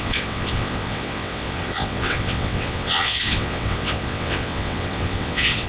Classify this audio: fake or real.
fake